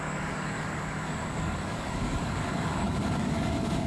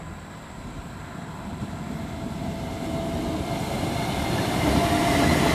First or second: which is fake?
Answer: first